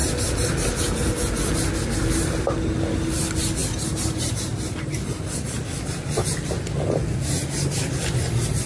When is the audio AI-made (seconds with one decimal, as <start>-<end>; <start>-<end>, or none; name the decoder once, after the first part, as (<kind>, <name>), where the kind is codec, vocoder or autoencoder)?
none